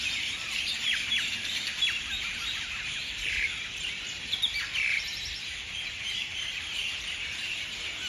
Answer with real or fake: fake